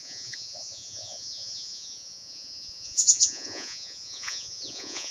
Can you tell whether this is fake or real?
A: fake